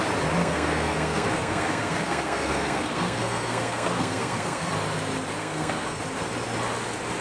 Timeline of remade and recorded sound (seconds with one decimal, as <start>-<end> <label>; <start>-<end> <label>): 0.0-0.4 recorded; 0.4-4.7 remade; 4.7-5.4 recorded; 5.4-6.0 remade; 6.0-7.2 recorded